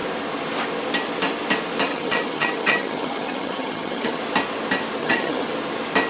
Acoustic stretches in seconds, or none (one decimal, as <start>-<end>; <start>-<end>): 0.0-1.9; 4.2-5.0; 5.5-6.1

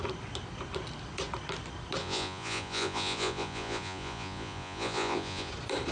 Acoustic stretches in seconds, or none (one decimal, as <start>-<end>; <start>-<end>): 0.0-2.0; 5.5-5.9

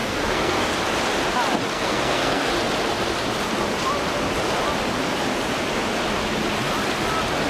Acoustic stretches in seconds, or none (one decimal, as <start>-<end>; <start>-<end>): 0.7-1.7; 2.5-7.5

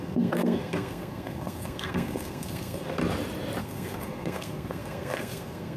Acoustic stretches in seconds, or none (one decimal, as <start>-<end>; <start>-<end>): 3.0-3.6

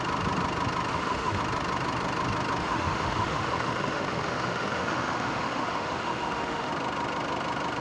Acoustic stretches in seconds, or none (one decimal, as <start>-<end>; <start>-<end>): 0.0-0.9; 1.4-2.6; 6.7-7.8

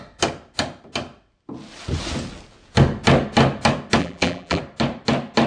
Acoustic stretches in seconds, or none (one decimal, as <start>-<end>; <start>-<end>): 0.0-4.0; 4.6-5.5

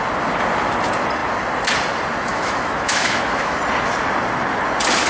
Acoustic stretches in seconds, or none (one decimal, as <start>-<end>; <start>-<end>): 0.0-2.3; 3.6-5.1

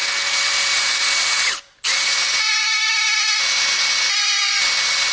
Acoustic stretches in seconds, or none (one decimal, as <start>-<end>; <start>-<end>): 0.0-2.4; 3.4-4.1; 4.6-5.1